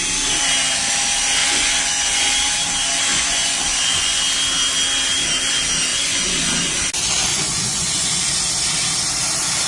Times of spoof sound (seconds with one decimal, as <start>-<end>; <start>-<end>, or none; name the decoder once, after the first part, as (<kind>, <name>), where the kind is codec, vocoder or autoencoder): 1.4-2.3 (vocoder, Vocos); 3.1-4.2; 5.9-6.8; 7.3-8.2